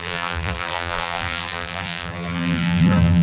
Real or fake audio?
fake